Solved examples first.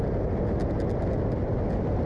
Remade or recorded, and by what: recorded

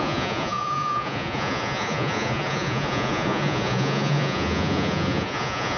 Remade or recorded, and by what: remade, vocoder, Vocos